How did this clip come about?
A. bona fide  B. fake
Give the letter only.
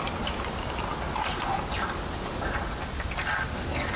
A